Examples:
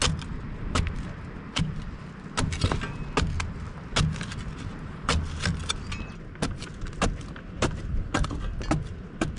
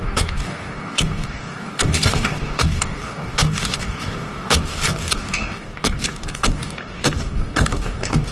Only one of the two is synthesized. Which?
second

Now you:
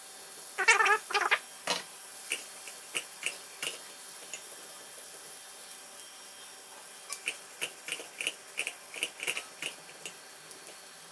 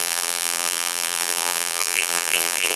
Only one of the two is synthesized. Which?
second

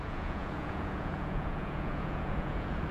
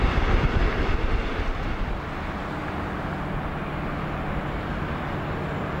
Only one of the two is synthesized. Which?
first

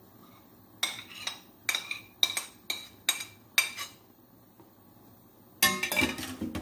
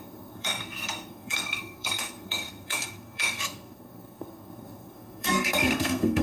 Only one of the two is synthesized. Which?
second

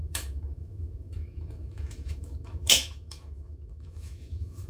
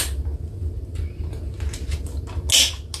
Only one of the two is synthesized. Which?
first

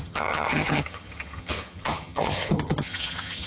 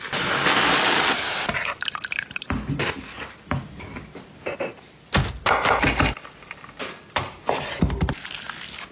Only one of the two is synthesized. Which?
first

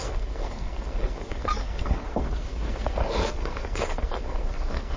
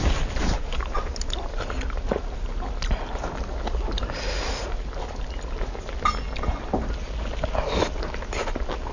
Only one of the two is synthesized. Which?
first